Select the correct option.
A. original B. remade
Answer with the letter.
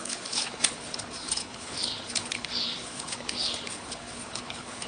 B